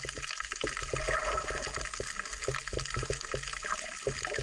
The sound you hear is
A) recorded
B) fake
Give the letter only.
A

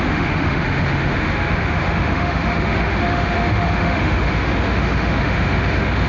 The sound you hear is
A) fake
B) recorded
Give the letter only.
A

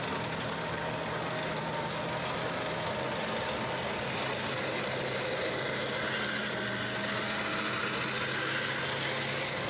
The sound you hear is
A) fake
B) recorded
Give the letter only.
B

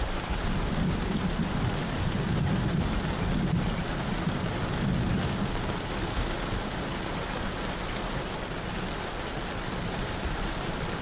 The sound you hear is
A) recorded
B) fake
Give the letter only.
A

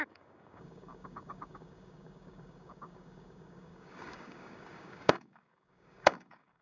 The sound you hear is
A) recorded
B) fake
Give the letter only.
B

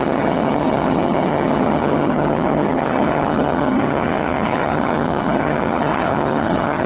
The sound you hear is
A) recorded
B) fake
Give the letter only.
B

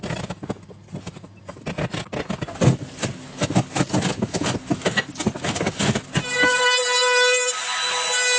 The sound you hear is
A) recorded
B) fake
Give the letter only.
A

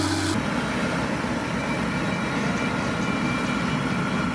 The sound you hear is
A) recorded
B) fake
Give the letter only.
A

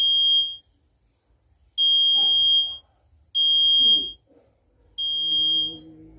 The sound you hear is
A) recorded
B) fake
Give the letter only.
A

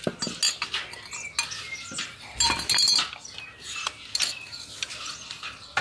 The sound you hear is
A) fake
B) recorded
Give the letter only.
B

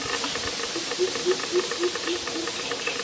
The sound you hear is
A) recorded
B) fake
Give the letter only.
A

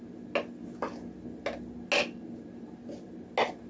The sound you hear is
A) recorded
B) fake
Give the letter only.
A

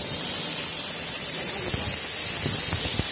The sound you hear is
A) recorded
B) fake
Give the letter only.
A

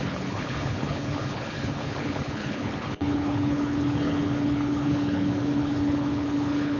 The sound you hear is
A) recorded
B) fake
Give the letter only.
B